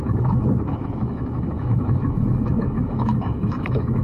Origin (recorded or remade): remade